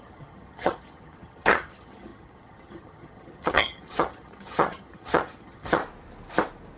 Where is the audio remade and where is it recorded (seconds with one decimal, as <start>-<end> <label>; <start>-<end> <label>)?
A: 0.0-5.8 remade; 5.8-6.8 recorded